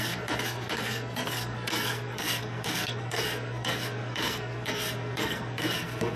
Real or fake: fake